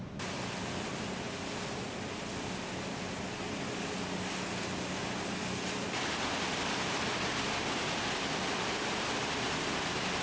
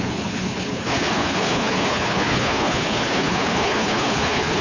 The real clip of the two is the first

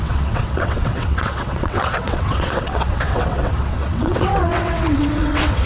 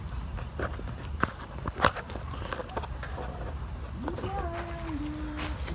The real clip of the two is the second